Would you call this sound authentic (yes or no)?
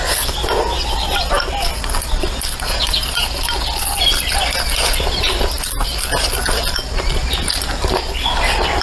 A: yes